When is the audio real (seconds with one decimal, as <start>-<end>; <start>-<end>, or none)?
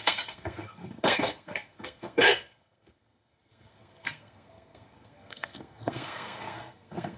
none